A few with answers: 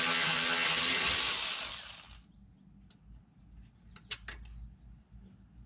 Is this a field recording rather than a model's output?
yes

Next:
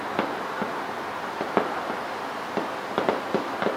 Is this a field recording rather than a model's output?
yes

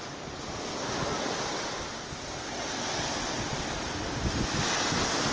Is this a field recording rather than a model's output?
yes